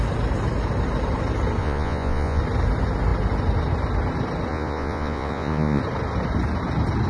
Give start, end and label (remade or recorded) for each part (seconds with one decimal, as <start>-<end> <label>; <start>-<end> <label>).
0.0-1.6 recorded; 1.6-2.4 remade; 2.4-4.5 recorded; 4.5-5.8 remade; 5.8-7.1 recorded